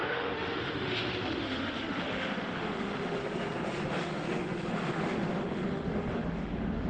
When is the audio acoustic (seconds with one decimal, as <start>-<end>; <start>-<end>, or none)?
3.2-3.9